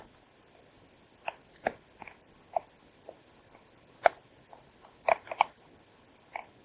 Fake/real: real